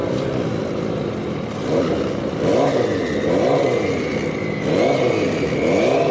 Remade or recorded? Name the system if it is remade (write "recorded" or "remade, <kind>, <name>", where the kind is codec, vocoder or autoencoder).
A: recorded